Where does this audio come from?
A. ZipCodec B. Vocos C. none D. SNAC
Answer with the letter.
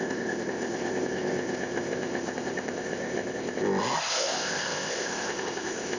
A